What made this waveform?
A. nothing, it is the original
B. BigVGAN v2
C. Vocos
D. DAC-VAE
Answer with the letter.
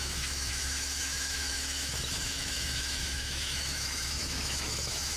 D